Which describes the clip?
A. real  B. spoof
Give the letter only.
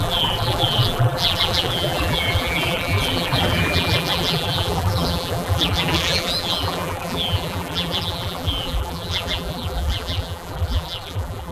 B